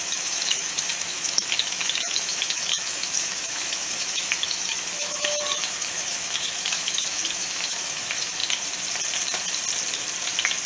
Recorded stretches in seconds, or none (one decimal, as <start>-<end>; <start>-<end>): 8.4-10.7